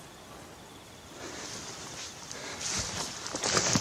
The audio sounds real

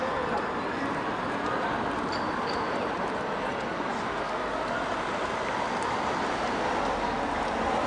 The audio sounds real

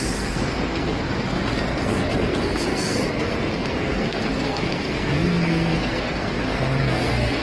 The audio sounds fake